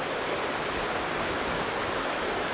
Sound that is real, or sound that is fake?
fake